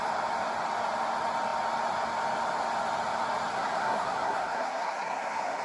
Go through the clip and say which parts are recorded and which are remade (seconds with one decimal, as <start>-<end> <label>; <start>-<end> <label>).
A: 0.0-3.5 recorded; 3.5-5.6 remade